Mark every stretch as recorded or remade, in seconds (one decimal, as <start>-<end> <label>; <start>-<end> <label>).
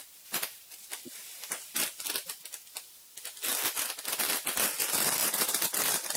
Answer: 0.0-5.2 recorded; 5.2-5.8 remade; 5.8-6.2 recorded